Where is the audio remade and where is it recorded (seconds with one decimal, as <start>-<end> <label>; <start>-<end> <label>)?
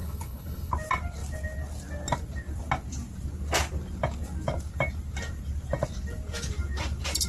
0.0-0.7 remade; 0.7-7.3 recorded